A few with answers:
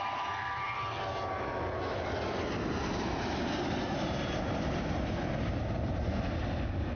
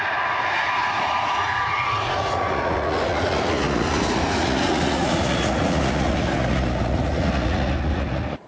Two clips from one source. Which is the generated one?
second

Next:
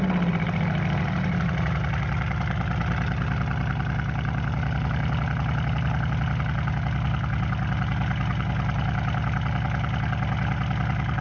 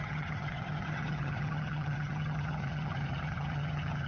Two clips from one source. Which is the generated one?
second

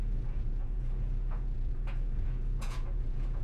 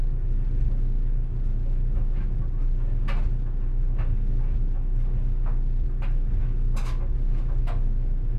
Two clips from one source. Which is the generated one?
first